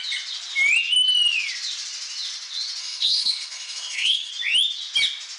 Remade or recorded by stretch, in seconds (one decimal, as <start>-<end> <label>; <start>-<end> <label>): 0.0-2.8 recorded; 2.8-4.3 remade; 4.3-5.4 recorded